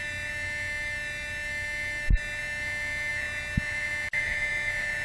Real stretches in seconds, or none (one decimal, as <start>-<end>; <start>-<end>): 0.0-5.0